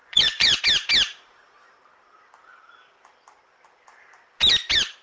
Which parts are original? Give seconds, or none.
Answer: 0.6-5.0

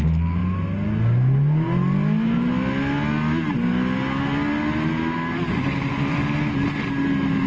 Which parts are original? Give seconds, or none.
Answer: 0.0-7.5